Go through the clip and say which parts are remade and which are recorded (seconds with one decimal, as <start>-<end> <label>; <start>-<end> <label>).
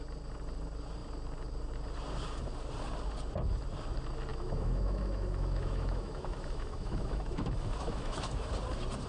0.0-4.3 recorded; 4.3-8.5 remade; 8.5-9.1 recorded